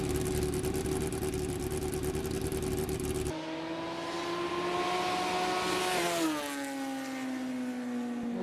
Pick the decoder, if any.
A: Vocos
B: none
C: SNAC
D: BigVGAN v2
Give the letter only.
B